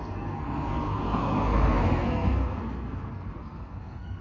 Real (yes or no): no